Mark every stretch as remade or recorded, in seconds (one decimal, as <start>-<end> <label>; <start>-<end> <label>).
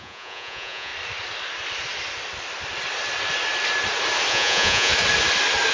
0.0-0.9 remade; 0.9-4.3 recorded; 4.3-4.9 remade; 4.9-5.7 recorded